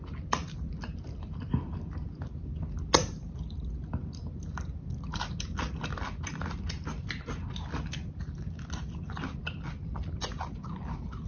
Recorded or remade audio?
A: recorded